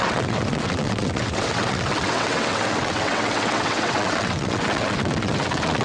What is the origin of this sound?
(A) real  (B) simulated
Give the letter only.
B